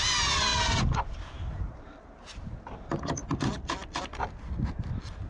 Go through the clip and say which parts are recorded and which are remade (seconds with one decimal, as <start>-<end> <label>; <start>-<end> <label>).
0.0-0.5 recorded; 0.5-2.5 remade; 2.5-5.3 recorded